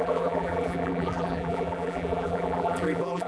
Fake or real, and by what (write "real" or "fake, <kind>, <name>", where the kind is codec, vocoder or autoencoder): fake, vocoder, BigVGAN v2